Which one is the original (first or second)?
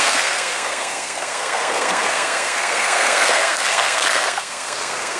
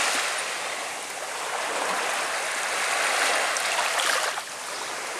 second